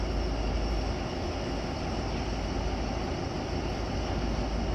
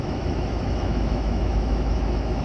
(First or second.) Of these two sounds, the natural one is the first